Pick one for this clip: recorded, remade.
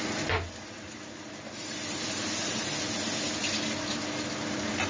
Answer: recorded